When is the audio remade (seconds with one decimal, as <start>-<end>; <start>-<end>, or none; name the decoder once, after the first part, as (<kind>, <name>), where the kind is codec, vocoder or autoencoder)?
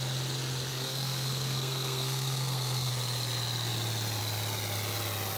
0.7-2.9 (codec, SNAC)